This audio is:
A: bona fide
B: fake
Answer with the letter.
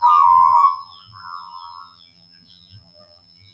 B